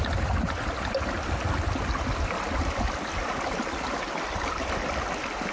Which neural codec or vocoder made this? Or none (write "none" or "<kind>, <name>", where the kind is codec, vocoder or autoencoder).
none